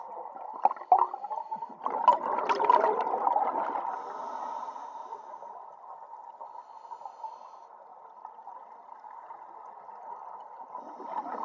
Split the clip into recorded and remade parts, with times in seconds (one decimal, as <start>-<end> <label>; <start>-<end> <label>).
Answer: 0.0-4.2 recorded; 4.2-5.7 remade; 5.7-11.4 recorded